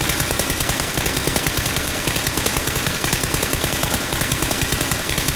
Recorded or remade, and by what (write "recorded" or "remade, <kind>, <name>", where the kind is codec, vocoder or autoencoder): remade, codec, SNAC